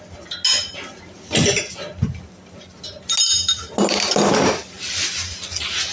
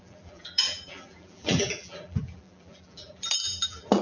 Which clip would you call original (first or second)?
first